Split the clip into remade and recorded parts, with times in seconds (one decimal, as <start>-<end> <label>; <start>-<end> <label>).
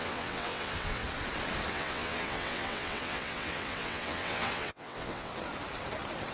0.0-1.0 remade; 1.0-1.7 recorded; 1.7-5.3 remade; 5.3-6.3 recorded